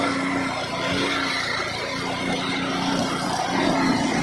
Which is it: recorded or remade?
recorded